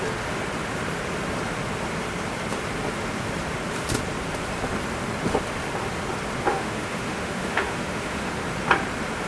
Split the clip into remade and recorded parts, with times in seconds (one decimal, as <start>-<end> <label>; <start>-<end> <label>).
0.0-6.5 recorded; 6.5-8.3 remade; 8.3-9.3 recorded